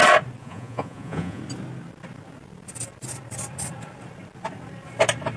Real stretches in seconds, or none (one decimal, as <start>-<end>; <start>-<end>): 0.0-0.4; 1.4-5.4